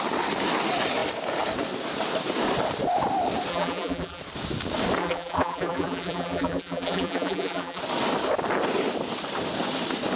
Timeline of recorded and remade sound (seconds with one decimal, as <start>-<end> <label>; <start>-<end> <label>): 0.0-3.5 recorded; 3.5-4.2 remade; 4.2-5.0 recorded; 5.0-7.8 remade; 7.8-10.2 recorded